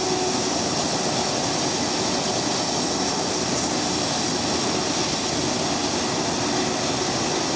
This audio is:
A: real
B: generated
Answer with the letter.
A